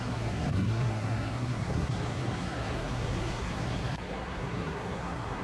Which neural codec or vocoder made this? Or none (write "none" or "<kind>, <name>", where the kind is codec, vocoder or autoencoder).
codec, SNAC